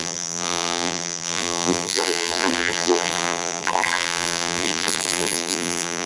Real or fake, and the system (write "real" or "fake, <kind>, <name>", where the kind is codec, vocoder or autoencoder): fake, vocoder, BigVGAN v2